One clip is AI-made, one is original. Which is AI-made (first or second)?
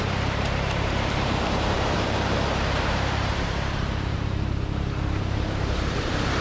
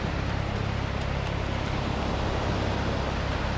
first